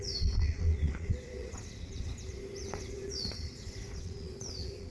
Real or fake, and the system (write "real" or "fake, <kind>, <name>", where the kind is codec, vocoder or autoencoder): fake, vocoder, Vocos